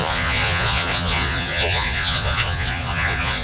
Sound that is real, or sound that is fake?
fake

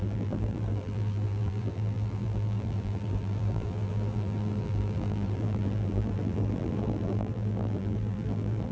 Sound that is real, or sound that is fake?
fake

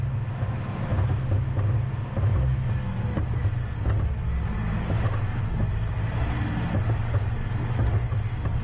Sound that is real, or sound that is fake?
real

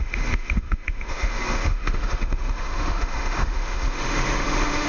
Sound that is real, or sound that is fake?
fake